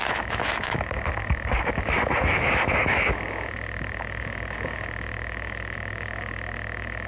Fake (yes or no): yes